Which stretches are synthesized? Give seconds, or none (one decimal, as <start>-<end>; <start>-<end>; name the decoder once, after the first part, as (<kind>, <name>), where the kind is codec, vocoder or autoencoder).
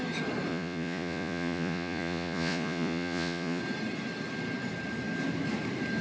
0.5-3.6 (vocoder, Vocos)